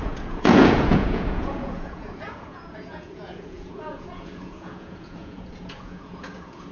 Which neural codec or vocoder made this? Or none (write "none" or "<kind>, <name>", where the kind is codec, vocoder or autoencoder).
vocoder, Vocos